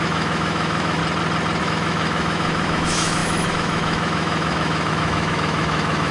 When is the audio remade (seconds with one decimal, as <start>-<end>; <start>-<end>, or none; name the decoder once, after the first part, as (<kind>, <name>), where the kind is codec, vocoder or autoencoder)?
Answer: 0.0-1.0 (autoencoder, DAC-VAE); 1.6-6.1